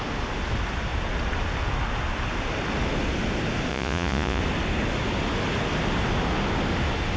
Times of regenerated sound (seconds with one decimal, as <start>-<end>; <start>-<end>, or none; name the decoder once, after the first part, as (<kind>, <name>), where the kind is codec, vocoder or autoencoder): 3.7-4.4 (vocoder, Vocos)